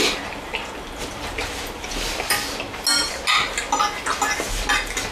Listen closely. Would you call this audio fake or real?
real